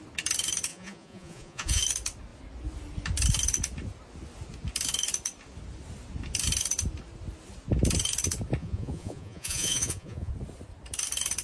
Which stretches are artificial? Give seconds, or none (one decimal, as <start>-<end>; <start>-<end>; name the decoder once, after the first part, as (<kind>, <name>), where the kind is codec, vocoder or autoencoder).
0.7-1.8 (vocoder, Vocos); 8.6-10.3